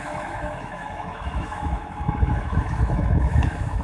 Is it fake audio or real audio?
fake